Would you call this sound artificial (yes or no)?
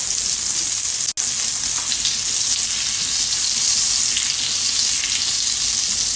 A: no